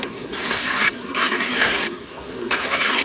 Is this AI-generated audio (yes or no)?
yes